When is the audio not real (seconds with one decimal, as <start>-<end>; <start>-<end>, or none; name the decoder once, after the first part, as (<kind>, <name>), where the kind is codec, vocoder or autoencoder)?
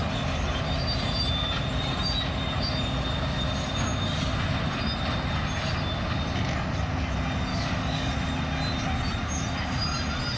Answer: 7.5-8.1 (codec, DAC)